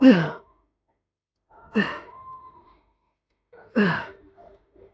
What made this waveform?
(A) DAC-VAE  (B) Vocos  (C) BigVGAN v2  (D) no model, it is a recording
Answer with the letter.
A